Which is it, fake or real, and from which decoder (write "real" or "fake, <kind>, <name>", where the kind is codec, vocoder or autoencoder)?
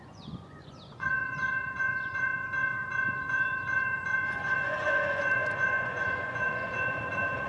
fake, vocoder, Vocos